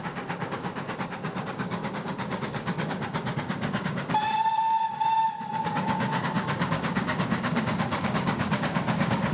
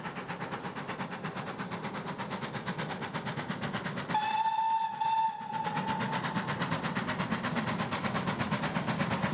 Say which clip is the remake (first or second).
first